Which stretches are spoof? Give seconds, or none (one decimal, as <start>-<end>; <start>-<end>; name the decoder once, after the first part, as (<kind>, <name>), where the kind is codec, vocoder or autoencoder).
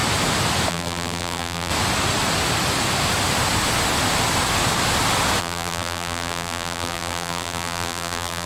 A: 0.7-1.7 (vocoder, BigVGAN v2); 5.4-8.5